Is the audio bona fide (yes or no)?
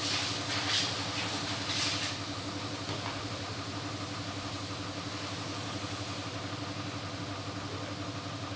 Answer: yes